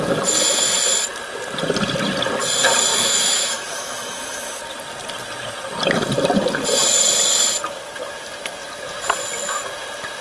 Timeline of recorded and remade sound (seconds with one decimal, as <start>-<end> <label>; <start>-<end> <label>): 0.0-2.9 recorded; 2.9-4.6 remade; 4.6-10.2 recorded